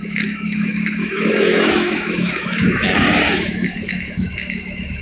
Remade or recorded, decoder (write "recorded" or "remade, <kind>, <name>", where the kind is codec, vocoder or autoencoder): remade, autoencoder, DAC-VAE